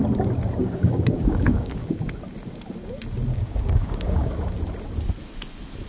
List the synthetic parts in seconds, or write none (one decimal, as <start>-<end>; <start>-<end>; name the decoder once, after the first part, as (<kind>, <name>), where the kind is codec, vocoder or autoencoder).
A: 0.6-1.9 (codec, DAC); 3.3-4.3

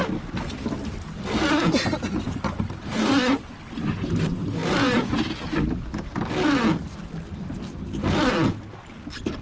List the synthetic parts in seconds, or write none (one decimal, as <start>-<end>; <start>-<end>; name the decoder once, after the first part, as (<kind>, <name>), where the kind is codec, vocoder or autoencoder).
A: none

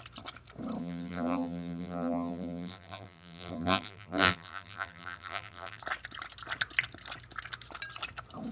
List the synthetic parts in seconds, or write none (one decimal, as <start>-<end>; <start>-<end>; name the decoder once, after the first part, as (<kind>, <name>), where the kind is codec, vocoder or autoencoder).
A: 0.8-5.8 (vocoder, BigVGAN v2)

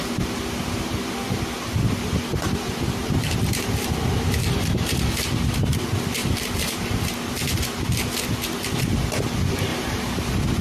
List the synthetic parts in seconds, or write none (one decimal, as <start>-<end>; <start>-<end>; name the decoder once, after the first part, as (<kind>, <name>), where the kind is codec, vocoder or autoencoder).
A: 2.3-4.0 (vocoder, BigVGAN v2); 4.4-5.1; 6.2-6.8; 9.7-10.6

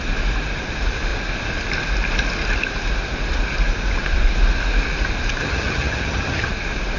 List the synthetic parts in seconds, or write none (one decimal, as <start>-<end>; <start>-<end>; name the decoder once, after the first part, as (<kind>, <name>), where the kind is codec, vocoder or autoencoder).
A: 5.4-6.5 (vocoder, HiFi-GAN)

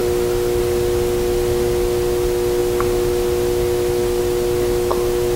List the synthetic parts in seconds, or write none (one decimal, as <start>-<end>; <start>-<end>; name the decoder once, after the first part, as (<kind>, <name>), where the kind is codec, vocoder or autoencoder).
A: none

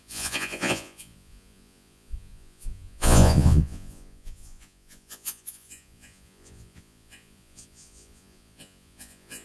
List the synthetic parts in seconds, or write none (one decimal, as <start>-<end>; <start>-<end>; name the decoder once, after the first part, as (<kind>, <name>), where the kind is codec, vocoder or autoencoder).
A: 0.0-9.4 (vocoder, Vocos)